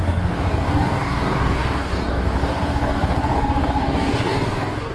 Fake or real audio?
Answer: fake